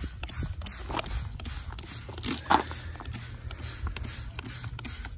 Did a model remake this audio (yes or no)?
no